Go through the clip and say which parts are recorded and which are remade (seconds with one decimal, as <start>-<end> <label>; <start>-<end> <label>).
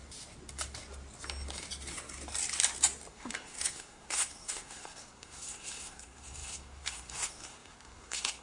0.0-3.1 recorded; 3.1-8.4 remade